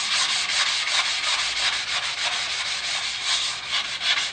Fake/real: real